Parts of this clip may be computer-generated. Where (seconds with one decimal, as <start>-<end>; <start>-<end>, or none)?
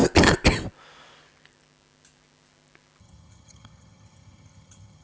3.0-5.0